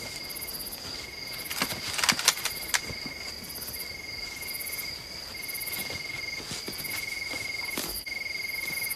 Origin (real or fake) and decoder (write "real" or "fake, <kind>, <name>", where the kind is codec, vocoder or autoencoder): real